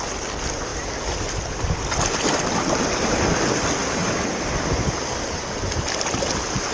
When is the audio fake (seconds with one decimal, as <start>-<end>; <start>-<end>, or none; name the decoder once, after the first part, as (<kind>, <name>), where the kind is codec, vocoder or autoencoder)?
none

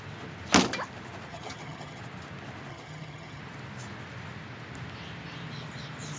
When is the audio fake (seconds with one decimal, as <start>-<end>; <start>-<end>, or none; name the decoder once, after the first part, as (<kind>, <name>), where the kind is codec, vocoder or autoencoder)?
1.3-2.0 (vocoder, HiFi-GAN); 2.7-3.4

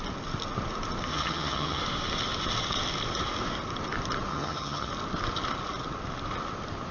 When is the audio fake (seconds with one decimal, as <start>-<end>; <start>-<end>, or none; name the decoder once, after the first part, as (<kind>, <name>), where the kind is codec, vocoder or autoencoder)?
1.1-1.8 (vocoder, HiFi-GAN); 4.3-4.9

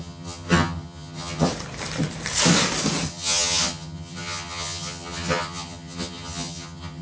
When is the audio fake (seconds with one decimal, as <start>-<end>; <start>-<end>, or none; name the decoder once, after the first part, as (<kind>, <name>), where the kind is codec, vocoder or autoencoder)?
0.0-1.5 (vocoder, HiFi-GAN); 3.1-7.0

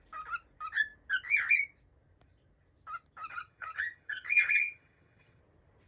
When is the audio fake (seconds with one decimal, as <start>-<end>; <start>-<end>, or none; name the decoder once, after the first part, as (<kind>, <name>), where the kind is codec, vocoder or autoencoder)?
3.3-5.4 (vocoder, HiFi-GAN)

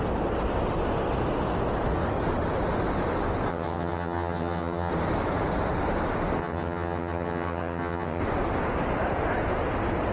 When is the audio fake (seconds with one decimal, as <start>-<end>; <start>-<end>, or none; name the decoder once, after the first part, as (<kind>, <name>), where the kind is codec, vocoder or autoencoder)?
3.5-4.9 (vocoder, HiFi-GAN); 6.4-8.2